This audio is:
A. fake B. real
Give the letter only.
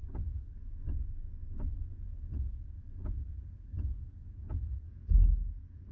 B